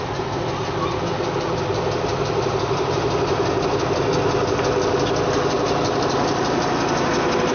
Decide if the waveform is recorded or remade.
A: recorded